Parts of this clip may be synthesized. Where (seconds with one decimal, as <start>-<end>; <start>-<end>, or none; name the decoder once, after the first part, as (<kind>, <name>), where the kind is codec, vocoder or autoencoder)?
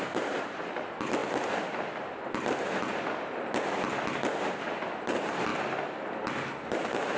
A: 0.0-1.2 (vocoder, BigVGAN v2); 4.7-5.5; 6.5-7.2